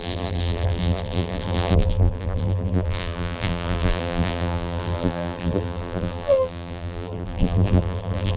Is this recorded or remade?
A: remade